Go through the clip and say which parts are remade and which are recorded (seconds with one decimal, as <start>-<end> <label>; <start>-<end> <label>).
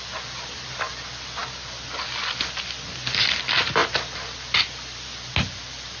0.0-6.0 recorded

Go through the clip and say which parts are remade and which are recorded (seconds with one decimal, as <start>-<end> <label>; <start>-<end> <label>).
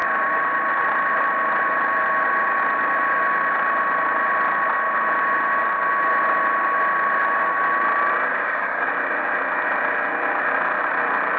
0.0-8.3 recorded; 8.3-8.9 remade; 8.9-11.4 recorded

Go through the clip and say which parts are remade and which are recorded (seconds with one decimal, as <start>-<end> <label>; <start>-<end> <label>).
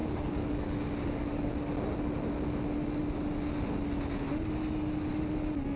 0.0-1.5 remade; 1.5-5.8 recorded